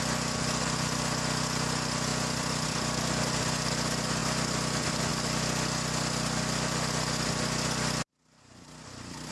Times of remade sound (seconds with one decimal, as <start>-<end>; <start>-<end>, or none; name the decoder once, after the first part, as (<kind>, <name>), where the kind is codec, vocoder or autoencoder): 2.1-3.2 (vocoder, BigVGAN v2)